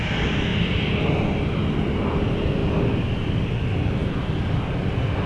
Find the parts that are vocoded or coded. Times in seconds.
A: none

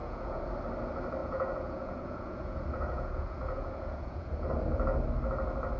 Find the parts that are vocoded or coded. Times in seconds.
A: 0.0-0.5 (vocoder, Vocos); 1.2-4.5

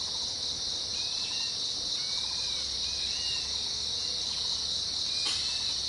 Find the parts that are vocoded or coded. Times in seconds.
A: none

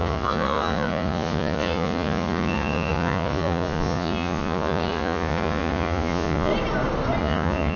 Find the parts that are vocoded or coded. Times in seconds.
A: 0.0-6.5 (vocoder, Vocos); 7.2-7.8

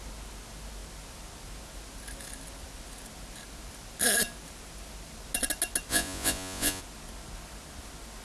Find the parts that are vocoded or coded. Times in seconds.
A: 5.9-6.8 (vocoder, Vocos)

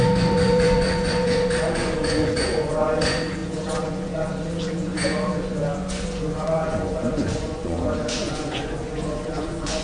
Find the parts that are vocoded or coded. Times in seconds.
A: 0.0-9.8 (vocoder, Vocos)

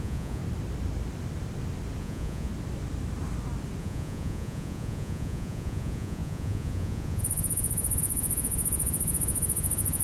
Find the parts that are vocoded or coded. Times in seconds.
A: 0.0-0.4 (vocoder, Vocos); 2.0-2.5; 3.8-10.0

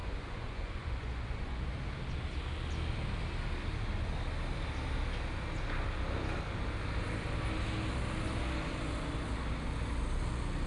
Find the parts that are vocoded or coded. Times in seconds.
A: 0.0-1.6 (vocoder, Vocos)